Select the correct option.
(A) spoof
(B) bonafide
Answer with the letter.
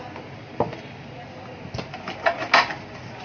B